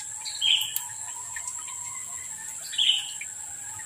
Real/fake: real